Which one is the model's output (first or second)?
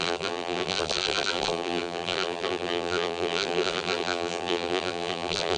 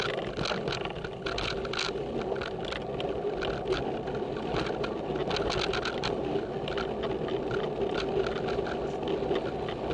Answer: first